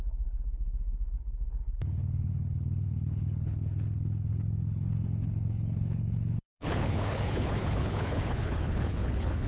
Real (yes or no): no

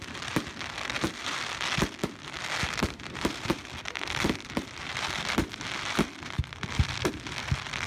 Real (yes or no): no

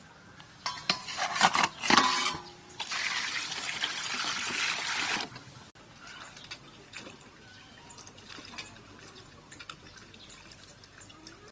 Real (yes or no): no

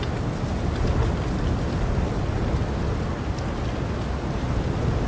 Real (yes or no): yes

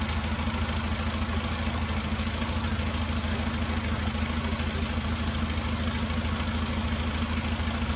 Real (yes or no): yes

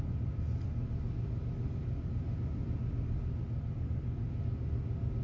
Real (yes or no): yes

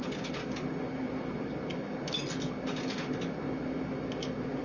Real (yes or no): yes